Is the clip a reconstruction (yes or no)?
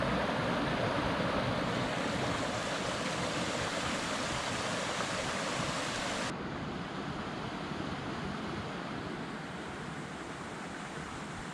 no